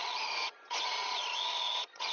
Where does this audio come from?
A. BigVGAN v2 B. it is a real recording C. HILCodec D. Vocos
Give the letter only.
D